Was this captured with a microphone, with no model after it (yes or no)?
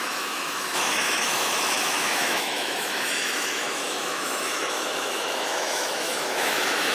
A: no